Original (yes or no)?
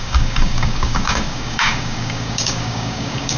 no